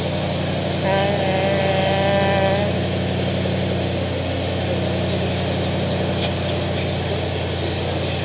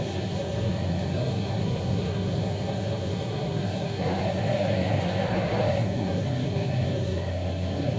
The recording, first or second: first